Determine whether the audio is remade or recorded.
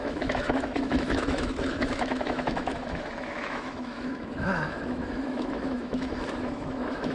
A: remade